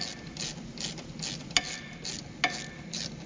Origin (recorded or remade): recorded